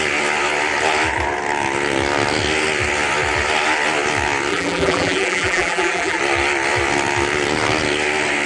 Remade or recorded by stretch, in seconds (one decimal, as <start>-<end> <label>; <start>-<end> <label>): 0.0-4.5 recorded; 4.5-6.2 remade; 6.2-8.5 recorded